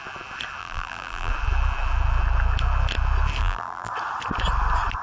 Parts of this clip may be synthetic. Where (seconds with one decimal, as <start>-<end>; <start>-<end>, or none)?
0.6-1.3; 3.4-3.9